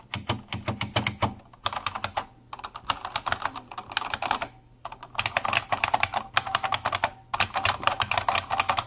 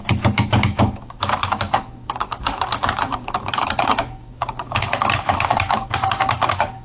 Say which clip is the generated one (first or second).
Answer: second